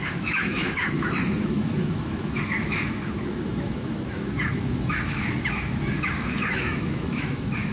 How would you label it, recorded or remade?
remade